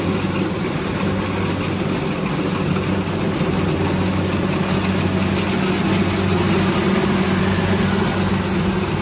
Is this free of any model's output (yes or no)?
yes